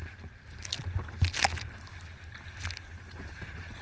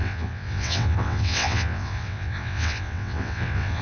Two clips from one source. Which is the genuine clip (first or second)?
first